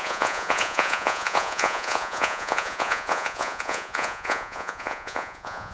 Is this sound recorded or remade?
remade